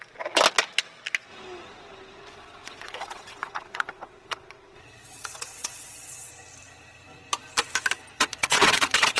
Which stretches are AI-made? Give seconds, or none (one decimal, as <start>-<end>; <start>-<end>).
2.3-6.3; 8.1-9.2